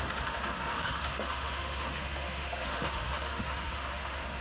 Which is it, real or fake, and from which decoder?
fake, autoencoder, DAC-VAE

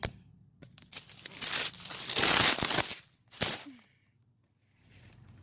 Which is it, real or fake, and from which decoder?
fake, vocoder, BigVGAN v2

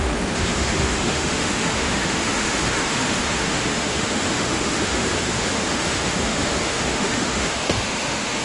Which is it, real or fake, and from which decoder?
fake, autoencoder, DAC-VAE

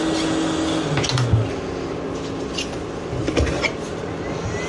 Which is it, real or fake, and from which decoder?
real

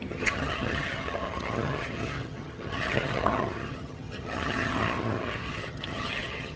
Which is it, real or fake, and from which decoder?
fake, vocoder, HiFi-GAN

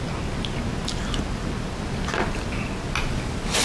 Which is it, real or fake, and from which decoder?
real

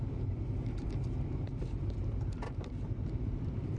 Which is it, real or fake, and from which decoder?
fake, vocoder, BigVGAN v2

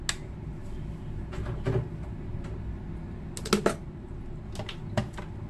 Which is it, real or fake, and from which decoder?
real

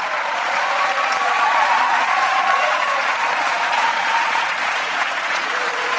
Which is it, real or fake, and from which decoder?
fake, vocoder, Vocos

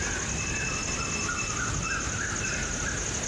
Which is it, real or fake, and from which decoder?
real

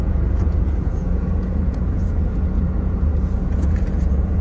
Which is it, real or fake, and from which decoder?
fake, vocoder, Vocos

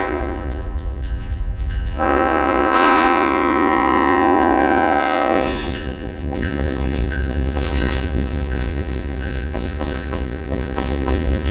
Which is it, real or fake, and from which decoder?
fake, vocoder, Vocos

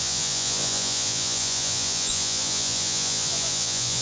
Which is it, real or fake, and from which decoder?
fake, vocoder, Vocos